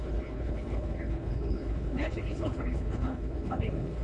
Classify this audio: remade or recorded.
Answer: remade